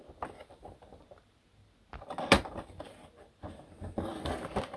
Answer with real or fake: real